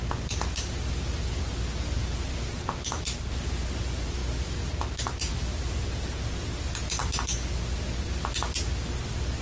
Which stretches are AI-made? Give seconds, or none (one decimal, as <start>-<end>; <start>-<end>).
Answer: none